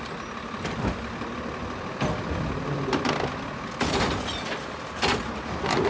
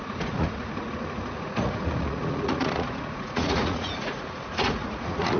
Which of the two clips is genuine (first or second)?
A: first